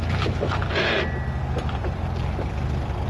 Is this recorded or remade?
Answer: recorded